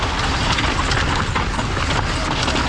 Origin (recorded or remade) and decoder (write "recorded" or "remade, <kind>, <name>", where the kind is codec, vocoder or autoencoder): recorded